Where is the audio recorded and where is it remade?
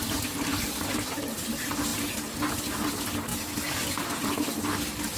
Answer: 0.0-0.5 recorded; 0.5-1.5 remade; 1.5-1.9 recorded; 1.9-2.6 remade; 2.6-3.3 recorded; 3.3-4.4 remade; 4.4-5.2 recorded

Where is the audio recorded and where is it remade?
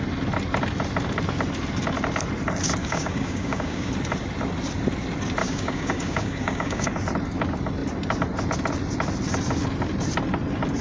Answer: 0.0-2.8 recorded; 2.8-3.9 remade; 3.9-5.4 recorded; 5.4-6.9 remade; 6.9-10.8 recorded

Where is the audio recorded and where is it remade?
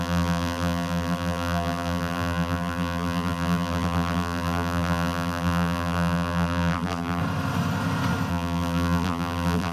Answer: 0.0-7.2 remade; 7.2-8.3 recorded; 8.3-9.7 remade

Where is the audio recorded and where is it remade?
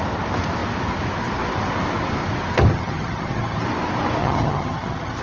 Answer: 0.0-2.7 recorded; 2.7-3.6 remade; 3.6-4.2 recorded; 4.2-5.2 remade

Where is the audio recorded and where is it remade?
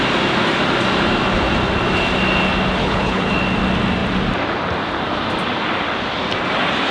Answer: 0.0-2.8 recorded; 2.8-3.3 remade; 3.3-6.9 recorded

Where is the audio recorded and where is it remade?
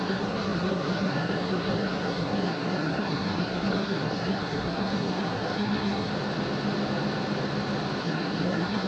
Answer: 0.0-6.1 remade; 6.1-8.0 recorded; 8.0-8.9 remade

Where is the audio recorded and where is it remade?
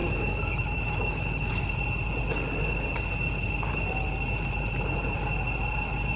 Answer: 0.0-1.5 remade; 1.5-6.2 recorded